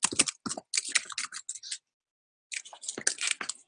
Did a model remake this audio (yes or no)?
no